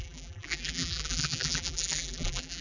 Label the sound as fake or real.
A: fake